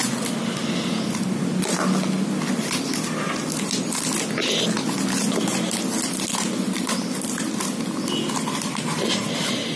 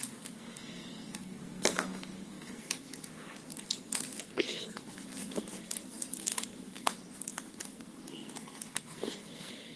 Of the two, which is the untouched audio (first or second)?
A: first